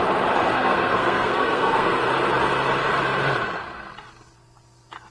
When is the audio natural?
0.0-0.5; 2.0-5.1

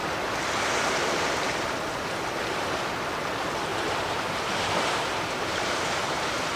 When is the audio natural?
0.0-3.7

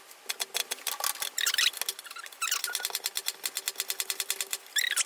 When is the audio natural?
0.0-5.1

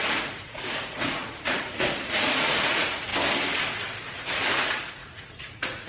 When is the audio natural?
3.1-4.1

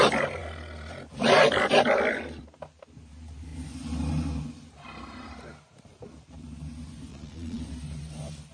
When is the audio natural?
0.0-7.1; 7.6-8.5

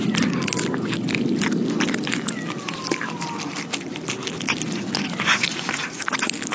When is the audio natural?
0.0-5.3; 6.1-6.5

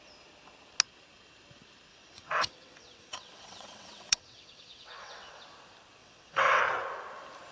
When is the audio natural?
0.0-1.9; 5.4-6.0; 6.6-7.5